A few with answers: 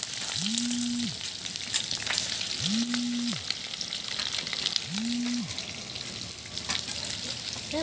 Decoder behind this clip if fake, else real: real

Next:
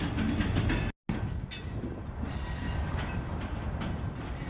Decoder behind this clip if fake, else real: real